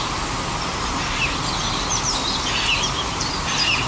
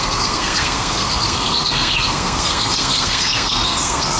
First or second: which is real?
first